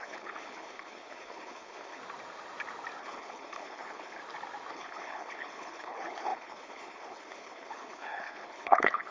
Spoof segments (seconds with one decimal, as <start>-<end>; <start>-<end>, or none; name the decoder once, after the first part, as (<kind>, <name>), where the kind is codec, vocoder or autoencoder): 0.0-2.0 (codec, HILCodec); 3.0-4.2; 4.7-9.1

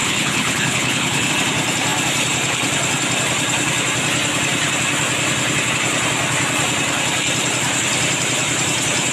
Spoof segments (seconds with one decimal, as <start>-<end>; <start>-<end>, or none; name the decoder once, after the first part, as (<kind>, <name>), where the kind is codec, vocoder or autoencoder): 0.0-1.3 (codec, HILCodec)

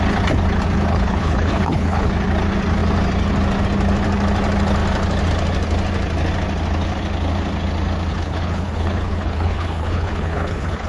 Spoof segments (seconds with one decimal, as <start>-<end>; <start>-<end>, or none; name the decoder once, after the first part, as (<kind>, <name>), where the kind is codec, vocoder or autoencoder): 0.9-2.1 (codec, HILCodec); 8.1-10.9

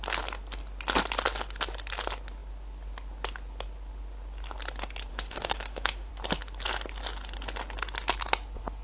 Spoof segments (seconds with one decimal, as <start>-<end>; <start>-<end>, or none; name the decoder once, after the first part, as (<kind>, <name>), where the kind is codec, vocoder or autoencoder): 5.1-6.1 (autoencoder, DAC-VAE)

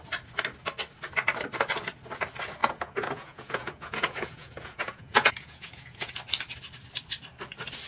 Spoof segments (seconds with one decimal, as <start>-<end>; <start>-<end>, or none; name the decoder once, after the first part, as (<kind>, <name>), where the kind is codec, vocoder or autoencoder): 2.6-6.1 (vocoder, Vocos)